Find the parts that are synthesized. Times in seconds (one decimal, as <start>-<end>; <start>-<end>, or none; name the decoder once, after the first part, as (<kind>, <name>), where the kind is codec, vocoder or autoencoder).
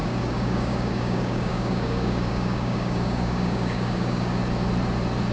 0.0-4.4 (codec, DAC)